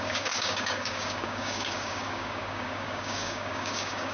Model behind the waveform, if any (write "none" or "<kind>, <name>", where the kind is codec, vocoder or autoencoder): codec, DAC